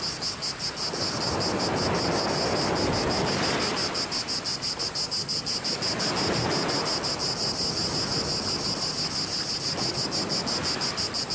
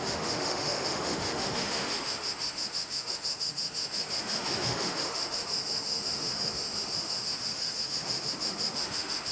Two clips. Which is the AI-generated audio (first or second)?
second